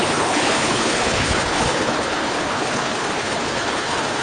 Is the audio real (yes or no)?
no